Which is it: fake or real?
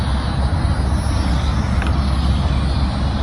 real